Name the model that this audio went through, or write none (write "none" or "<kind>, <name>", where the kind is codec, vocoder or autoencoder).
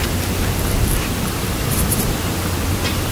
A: none